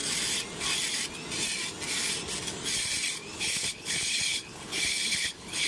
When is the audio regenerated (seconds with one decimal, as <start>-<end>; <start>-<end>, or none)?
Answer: 3.4-5.7